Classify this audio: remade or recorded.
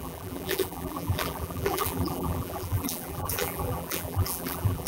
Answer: remade